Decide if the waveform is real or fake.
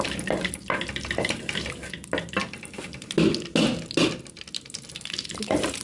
real